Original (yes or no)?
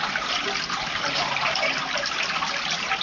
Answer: yes